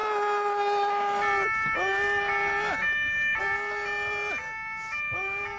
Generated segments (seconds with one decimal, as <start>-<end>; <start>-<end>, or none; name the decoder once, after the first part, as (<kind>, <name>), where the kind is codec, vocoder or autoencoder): none

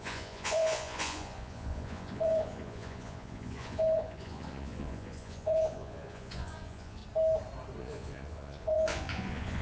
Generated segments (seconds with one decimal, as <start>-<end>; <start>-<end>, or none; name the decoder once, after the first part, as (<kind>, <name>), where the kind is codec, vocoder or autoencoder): 0.0-7.0 (vocoder, Vocos); 7.8-9.6

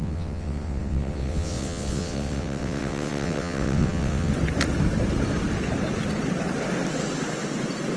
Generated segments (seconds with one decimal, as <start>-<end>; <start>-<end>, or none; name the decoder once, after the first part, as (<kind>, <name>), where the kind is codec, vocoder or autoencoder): 0.0-4.3 (vocoder, WaveNeXt)

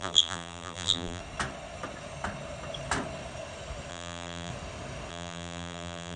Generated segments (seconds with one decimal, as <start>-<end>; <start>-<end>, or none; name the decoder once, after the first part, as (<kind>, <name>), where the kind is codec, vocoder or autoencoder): 0.0-1.2 (vocoder, BigVGAN v2); 3.9-4.5; 5.1-6.2

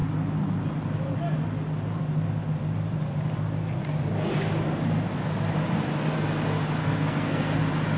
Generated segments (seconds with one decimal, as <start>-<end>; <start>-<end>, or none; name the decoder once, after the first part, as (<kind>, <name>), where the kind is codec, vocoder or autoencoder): 6.8-7.6 (codec, SNAC)

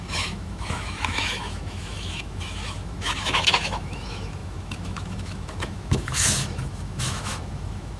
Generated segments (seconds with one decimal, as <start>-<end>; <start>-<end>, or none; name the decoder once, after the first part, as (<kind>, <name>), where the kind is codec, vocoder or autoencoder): 0.0-8.0 (autoencoder, DAC-VAE)